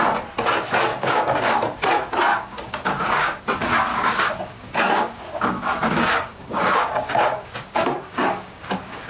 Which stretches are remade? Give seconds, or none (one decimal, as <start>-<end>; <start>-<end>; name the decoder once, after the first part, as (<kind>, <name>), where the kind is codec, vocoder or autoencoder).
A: 0.9-1.6 (codec, DAC); 2.3-3.4; 3.9-9.1